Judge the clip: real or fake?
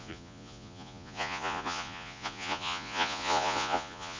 fake